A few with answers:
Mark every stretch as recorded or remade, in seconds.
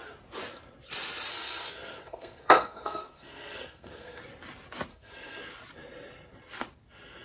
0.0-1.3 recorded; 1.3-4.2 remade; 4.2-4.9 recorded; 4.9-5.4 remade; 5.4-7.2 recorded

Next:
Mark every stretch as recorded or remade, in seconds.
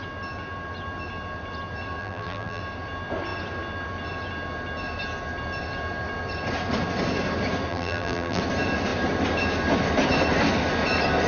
0.0-2.0 recorded; 2.0-2.6 remade; 2.6-7.7 recorded; 7.7-8.4 remade; 8.4-11.3 recorded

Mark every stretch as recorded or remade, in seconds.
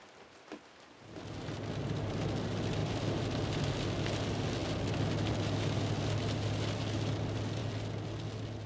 0.0-2.8 recorded; 2.8-3.7 remade; 3.7-8.7 recorded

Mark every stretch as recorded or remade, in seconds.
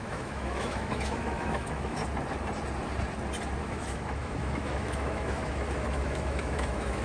0.0-2.0 remade; 2.0-3.6 recorded; 3.6-7.0 remade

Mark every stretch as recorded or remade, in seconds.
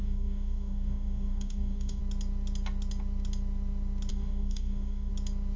0.0-2.0 remade; 2.0-4.1 recorded; 4.1-5.1 remade; 5.1-5.6 recorded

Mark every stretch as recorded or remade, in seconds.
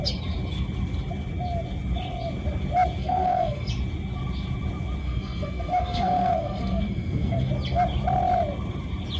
0.0-3.0 recorded; 3.0-3.7 remade; 3.7-5.0 recorded; 5.0-7.5 remade; 7.5-9.2 recorded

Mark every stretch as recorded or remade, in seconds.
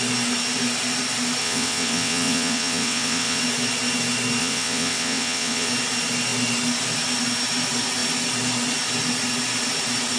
0.0-1.4 recorded; 1.4-3.4 remade; 3.4-4.4 recorded; 4.4-5.7 remade; 5.7-10.2 recorded